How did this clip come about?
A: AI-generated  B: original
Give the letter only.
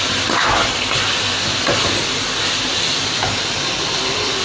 B